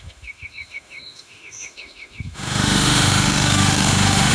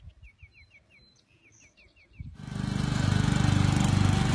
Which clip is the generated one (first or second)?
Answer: first